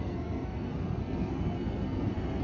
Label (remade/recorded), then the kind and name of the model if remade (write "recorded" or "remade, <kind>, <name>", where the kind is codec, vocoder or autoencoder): remade, codec, SNAC